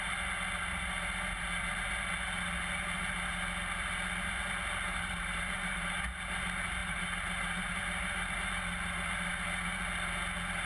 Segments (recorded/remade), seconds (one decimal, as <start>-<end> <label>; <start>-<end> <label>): 0.0-4.9 recorded; 4.9-5.9 remade; 5.9-6.8 recorded; 6.8-7.8 remade; 7.8-10.7 recorded